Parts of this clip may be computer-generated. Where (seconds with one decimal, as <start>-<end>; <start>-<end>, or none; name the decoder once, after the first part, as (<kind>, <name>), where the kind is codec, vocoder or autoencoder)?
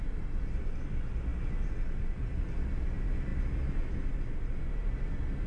none